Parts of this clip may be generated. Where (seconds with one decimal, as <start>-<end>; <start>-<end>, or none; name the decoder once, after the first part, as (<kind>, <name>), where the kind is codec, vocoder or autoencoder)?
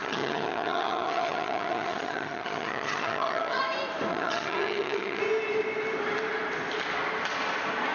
0.0-3.6 (vocoder, HiFi-GAN); 4.1-5.2